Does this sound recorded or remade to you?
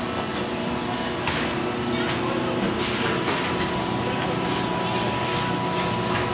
recorded